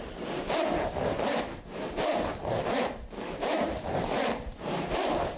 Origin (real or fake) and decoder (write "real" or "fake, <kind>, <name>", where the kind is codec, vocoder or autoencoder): fake, vocoder, BigVGAN v2